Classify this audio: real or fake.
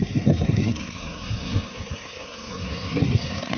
fake